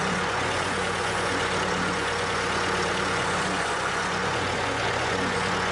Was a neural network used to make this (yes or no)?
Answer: yes